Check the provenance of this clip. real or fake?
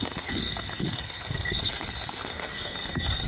fake